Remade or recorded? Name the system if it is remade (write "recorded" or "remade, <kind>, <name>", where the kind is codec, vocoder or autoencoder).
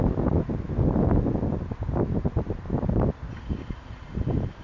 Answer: recorded